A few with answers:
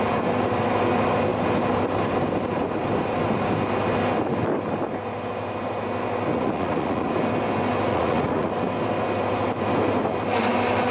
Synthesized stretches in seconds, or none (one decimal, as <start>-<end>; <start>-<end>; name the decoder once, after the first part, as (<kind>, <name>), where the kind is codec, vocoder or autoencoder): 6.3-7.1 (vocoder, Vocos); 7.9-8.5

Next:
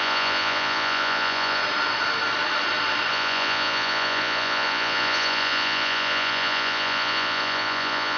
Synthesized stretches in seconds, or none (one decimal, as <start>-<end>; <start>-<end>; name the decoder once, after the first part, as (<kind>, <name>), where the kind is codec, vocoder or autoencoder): 0.0-1.6 (vocoder, Vocos); 3.1-8.2

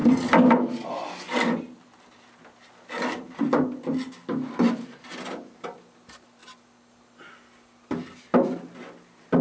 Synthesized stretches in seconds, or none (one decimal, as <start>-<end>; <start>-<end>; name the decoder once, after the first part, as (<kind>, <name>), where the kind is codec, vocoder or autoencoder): none

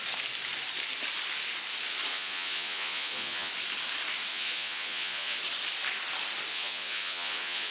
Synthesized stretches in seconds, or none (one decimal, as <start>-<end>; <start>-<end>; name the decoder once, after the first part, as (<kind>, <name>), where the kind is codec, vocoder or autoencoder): 2.1-3.5 (vocoder, Vocos); 4.3-5.4; 6.5-7.7

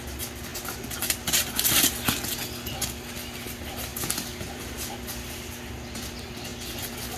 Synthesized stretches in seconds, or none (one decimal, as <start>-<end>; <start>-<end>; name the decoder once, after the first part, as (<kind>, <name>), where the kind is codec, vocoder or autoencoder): none